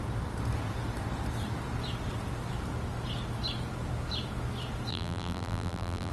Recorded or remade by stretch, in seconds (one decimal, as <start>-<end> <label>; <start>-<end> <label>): 0.0-4.9 recorded; 4.9-6.1 remade

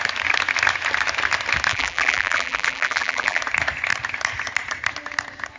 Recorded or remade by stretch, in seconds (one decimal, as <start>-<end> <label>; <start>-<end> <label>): 0.0-1.7 recorded; 1.7-3.4 remade; 3.4-5.6 recorded

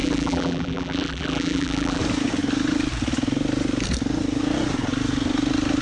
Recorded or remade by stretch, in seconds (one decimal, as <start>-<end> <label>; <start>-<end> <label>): 0.0-2.0 remade; 2.0-5.8 recorded

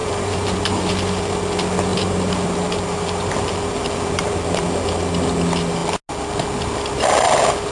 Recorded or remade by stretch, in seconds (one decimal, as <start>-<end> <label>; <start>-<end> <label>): 0.0-0.9 remade; 0.9-1.9 recorded; 1.9-4.6 remade; 4.6-7.7 recorded

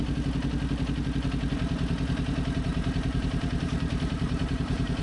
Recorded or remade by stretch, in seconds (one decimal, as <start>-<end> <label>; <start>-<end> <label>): 0.0-2.7 recorded; 2.7-5.0 remade

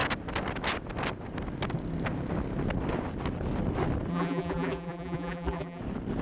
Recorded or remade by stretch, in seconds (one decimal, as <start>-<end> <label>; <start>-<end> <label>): 0.0-4.1 recorded; 4.1-5.8 remade; 5.8-6.2 recorded

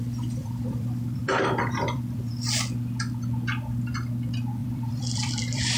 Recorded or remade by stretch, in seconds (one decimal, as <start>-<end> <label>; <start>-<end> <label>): 0.0-0.4 recorded; 0.4-2.3 remade; 2.3-4.6 recorded; 4.6-5.8 remade